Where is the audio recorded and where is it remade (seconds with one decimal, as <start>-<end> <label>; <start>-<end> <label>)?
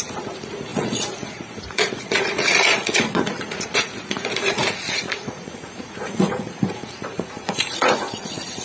0.0-8.6 remade